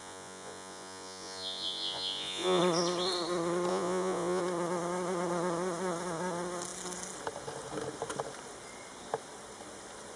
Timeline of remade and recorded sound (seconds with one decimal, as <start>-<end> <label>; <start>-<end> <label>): 0.0-2.6 remade; 2.6-3.7 recorded; 3.7-4.4 remade; 4.4-10.2 recorded